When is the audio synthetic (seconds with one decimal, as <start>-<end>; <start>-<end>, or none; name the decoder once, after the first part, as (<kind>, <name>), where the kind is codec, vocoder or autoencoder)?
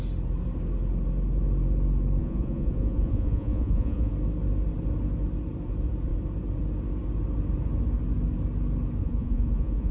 2.2-4.1 (vocoder, Vocos); 9.0-9.9